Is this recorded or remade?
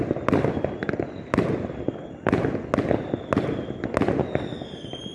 recorded